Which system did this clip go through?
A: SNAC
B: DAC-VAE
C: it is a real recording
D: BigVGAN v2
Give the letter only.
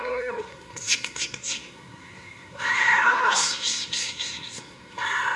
A